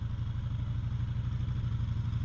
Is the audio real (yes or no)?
yes